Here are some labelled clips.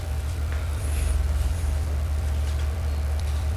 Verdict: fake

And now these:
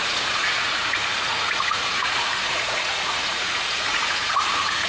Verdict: fake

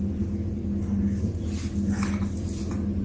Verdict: real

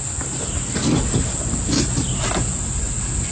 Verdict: real